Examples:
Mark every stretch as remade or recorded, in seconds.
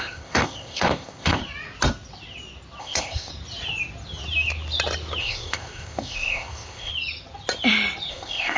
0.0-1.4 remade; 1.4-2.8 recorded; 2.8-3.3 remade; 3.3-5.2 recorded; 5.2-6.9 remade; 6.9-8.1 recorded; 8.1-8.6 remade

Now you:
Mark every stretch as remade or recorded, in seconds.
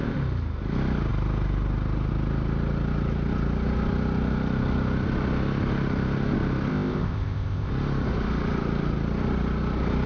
0.0-6.7 recorded; 6.7-7.7 remade; 7.7-10.1 recorded